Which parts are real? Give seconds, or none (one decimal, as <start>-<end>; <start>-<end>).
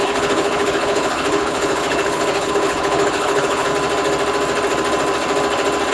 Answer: 3.7-5.9